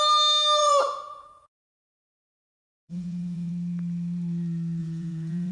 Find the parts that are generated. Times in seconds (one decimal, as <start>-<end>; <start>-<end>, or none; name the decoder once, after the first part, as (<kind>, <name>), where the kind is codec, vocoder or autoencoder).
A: 0.6-3.5 (vocoder, Vocos); 4.8-5.5